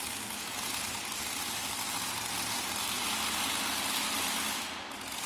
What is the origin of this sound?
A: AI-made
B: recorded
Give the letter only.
B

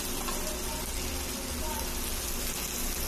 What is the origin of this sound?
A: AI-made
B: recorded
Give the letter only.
B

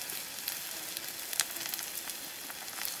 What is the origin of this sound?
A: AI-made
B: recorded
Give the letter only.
B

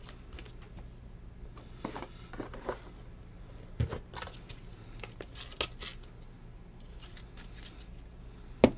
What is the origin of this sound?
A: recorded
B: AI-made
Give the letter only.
A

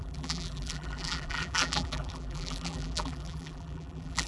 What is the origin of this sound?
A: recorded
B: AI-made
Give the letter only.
B